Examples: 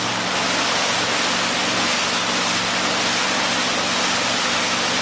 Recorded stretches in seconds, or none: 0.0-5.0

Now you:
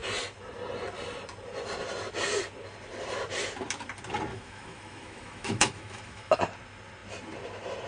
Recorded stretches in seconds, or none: 0.0-4.3; 6.4-7.9